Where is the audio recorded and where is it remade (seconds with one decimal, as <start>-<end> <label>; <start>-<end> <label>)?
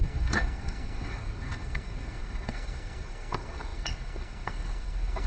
0.0-5.3 remade